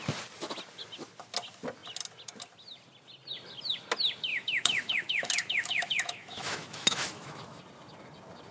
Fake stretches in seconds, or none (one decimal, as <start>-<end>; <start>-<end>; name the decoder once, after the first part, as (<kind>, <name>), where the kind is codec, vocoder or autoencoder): 4.3-7.6 (autoencoder, DAC-VAE)